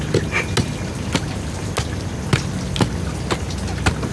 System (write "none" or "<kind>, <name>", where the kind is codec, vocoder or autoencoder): none